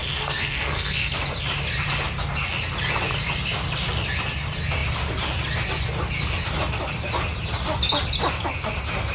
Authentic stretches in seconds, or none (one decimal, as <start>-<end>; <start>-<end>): 1.1-9.1